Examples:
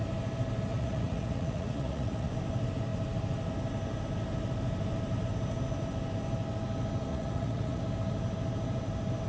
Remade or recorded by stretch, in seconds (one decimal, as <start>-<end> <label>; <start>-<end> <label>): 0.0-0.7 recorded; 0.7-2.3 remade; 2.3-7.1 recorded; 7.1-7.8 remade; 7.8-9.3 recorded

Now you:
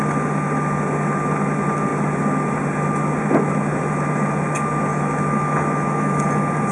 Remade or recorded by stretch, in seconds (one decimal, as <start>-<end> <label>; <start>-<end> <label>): 0.0-4.9 recorded; 4.9-6.2 remade; 6.2-6.7 recorded

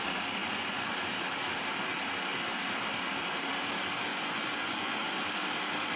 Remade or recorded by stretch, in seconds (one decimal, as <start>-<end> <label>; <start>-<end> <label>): 0.0-0.4 recorded; 0.4-0.9 remade; 0.9-4.1 recorded; 4.1-5.2 remade; 5.2-6.0 recorded

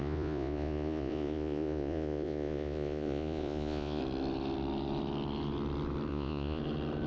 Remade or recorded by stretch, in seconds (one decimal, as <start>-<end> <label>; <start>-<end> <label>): 0.0-4.0 remade; 4.0-6.1 recorded; 6.1-6.6 remade; 6.6-7.1 recorded

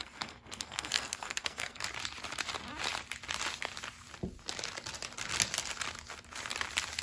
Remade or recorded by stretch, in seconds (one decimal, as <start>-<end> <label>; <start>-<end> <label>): 0.0-1.8 remade; 1.8-7.0 recorded

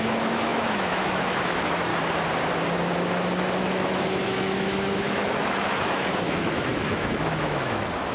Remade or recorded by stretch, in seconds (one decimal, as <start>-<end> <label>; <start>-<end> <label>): 0.0-1.9 remade; 1.9-3.6 recorded; 3.6-8.1 remade

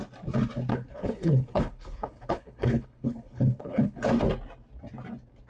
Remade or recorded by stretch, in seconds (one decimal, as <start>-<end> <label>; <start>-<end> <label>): 0.0-0.7 recorded; 0.7-4.0 remade; 4.0-5.5 recorded

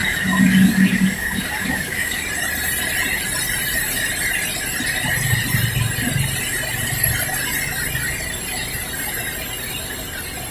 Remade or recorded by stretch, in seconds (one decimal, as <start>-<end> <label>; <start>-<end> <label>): 0.0-2.2 remade; 2.2-10.5 recorded